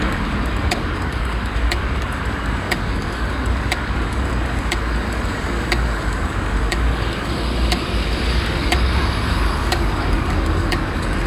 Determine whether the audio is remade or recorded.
remade